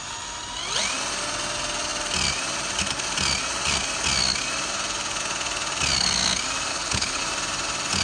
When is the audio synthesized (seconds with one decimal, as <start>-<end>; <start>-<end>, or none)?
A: 6.7-7.2